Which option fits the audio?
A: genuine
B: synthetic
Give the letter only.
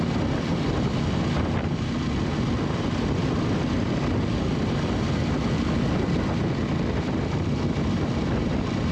A